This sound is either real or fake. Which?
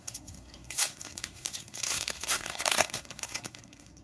fake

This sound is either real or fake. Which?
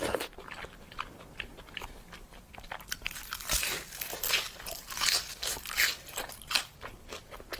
real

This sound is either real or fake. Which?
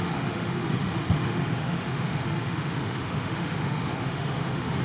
fake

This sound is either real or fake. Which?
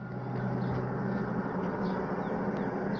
real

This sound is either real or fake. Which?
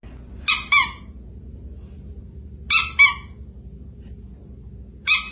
real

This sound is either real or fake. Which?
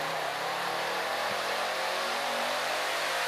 fake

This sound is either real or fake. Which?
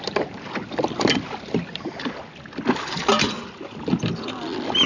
real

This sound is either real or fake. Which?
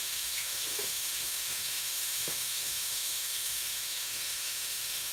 fake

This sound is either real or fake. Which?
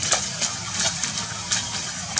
real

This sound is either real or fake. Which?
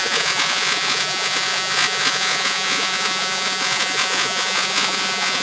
fake